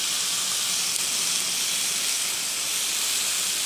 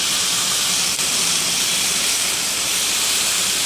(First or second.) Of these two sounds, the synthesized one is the second